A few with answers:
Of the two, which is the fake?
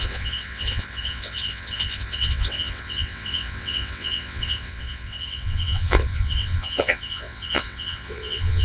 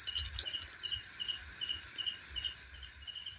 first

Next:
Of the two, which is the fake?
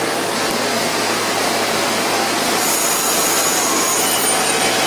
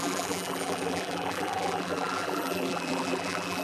second